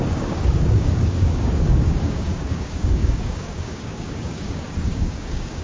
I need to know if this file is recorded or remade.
remade